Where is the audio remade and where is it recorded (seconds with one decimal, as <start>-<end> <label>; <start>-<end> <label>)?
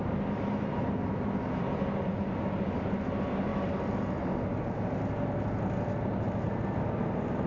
0.0-7.5 recorded